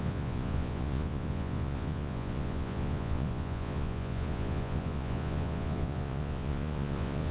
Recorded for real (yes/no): no